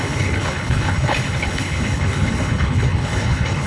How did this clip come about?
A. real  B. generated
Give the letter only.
B